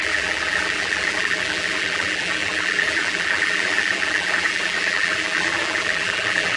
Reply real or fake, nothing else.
fake